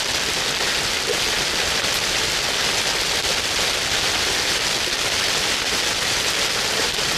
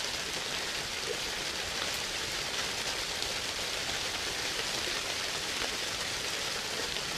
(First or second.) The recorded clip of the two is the first